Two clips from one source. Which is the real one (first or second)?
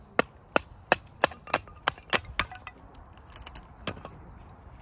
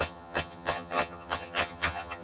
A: first